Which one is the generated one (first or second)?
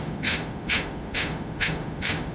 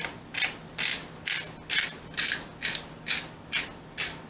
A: first